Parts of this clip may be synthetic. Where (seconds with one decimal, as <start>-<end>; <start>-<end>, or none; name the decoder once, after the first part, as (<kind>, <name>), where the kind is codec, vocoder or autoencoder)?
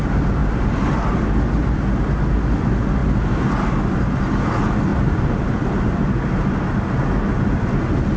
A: 0.4-1.5 (vocoder, BigVGAN v2); 4.9-6.0